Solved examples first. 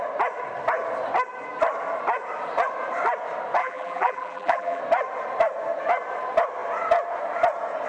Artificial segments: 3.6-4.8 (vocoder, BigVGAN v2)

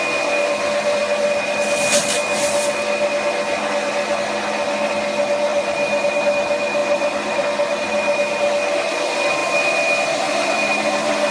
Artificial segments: 5.5-6.2 (vocoder, BigVGAN v2); 6.8-7.4; 9.4-11.3

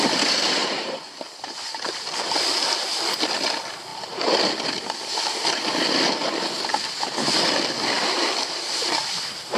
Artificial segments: 0.6-2.2 (vocoder, BigVGAN v2); 3.9-4.6; 6.2-7.1

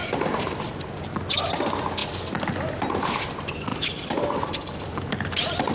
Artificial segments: 3.7-5.7 (vocoder, BigVGAN v2)

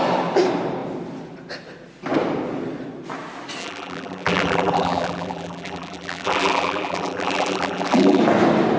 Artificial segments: 3.6-8.2 (vocoder, BigVGAN v2)

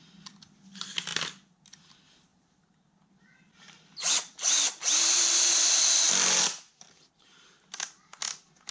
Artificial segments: 2.3-7.1 (vocoder, BigVGAN v2)